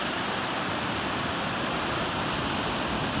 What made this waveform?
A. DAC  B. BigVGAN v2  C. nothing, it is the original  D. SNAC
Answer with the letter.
C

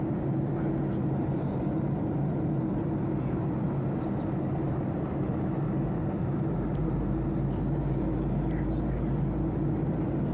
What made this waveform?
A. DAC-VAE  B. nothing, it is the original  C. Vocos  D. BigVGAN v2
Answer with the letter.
B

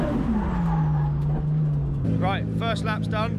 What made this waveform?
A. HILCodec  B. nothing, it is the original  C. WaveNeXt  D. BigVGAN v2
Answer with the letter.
B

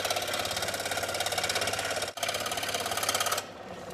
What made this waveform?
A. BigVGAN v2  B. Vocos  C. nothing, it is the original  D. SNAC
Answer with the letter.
C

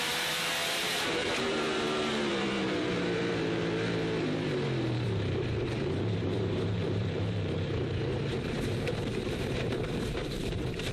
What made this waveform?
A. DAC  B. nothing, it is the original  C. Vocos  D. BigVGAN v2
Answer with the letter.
D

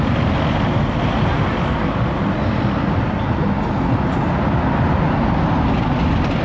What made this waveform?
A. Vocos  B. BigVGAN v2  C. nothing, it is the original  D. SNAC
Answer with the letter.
C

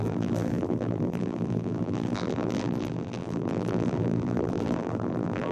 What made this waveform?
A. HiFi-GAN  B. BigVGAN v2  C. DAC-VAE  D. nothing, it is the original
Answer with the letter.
B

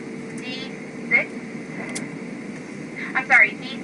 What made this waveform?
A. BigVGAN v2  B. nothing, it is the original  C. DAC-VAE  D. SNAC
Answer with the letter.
B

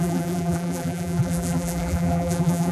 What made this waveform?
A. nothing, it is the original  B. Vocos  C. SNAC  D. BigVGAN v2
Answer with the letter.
D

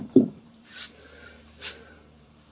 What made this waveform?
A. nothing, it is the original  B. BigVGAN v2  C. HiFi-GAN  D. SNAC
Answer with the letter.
B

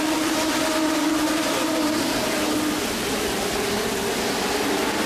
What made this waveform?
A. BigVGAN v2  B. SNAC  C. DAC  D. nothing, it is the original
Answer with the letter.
A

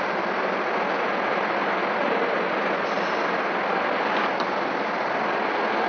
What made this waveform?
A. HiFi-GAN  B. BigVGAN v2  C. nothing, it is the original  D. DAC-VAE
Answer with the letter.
C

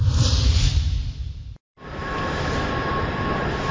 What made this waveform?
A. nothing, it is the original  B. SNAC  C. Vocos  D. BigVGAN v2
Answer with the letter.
D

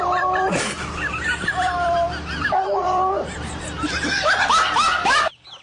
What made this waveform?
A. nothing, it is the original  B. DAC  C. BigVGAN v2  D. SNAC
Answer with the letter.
C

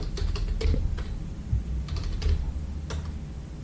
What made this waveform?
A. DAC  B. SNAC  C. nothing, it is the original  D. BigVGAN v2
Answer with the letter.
C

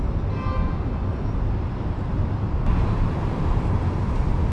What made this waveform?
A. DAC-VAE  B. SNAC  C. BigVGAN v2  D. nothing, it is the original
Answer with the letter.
D